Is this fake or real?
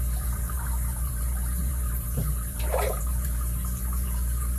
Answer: fake